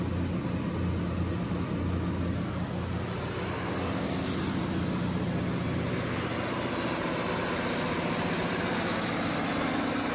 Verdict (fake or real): real